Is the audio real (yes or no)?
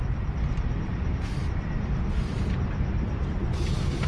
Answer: yes